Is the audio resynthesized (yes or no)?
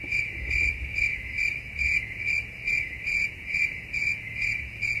yes